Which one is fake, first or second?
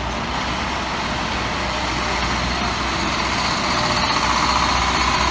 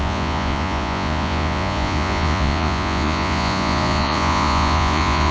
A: second